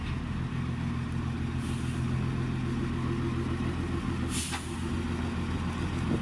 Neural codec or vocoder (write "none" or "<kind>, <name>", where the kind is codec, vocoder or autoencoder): none